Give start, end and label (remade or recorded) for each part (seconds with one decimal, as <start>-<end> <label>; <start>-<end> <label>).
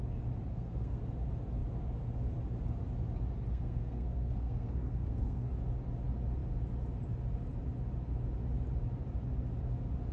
0.0-0.5 recorded; 0.5-1.0 remade; 1.0-3.5 recorded; 3.5-5.5 remade; 5.5-10.1 recorded